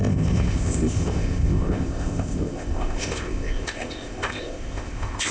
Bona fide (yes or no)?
no